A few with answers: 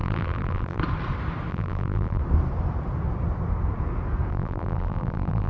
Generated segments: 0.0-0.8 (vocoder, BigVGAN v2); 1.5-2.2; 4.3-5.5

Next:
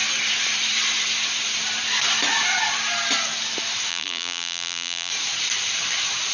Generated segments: 3.9-5.1 (vocoder, BigVGAN v2)

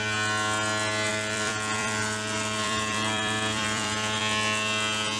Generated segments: 1.1-4.2 (vocoder, BigVGAN v2)